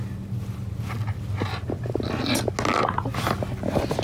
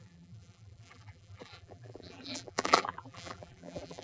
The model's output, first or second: second